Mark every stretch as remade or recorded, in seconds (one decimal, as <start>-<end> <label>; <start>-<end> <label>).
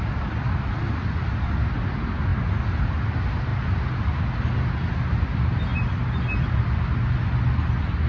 0.0-8.1 recorded